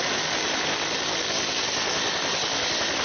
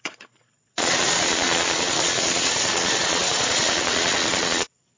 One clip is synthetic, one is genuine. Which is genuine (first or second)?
first